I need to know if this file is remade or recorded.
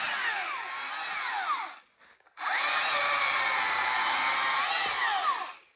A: recorded